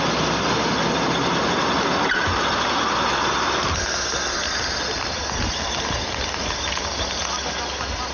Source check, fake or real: real